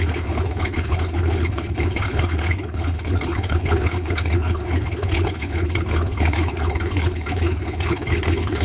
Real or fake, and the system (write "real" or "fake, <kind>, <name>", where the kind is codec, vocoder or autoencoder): fake, codec, HILCodec